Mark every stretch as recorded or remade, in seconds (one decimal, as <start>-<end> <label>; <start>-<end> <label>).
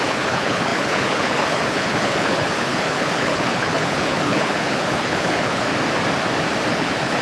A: 0.0-5.7 remade; 5.7-6.7 recorded; 6.7-7.2 remade